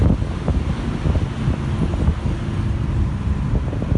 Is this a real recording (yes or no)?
yes